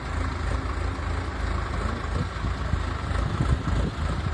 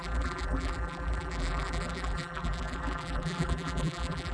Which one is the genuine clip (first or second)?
first